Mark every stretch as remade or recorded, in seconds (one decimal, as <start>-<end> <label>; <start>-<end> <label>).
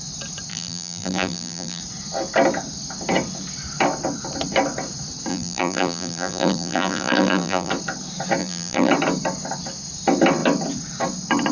0.0-0.5 recorded; 0.5-1.8 remade; 1.8-5.3 recorded; 5.3-7.7 remade; 7.7-8.4 recorded; 8.4-8.9 remade; 8.9-11.5 recorded